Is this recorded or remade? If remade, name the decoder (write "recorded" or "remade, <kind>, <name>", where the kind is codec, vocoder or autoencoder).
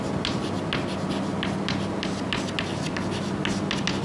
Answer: recorded